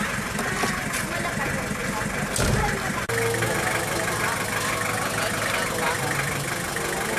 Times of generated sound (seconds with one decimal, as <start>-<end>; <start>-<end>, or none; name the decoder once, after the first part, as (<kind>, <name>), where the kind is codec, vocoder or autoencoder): none